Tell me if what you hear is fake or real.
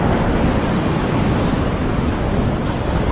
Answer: real